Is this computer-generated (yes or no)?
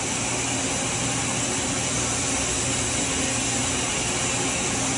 no